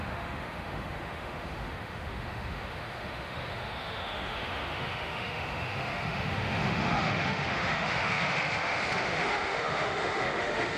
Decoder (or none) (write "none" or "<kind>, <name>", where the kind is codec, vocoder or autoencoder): autoencoder, DAC-VAE